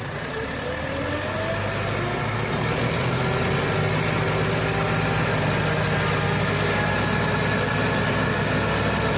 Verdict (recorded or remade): recorded